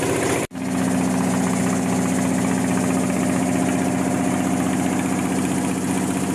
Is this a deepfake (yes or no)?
no